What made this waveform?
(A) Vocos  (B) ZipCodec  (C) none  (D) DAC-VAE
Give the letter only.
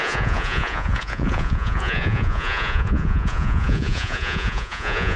A